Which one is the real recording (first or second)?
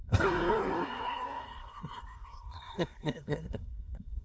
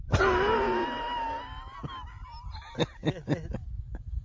second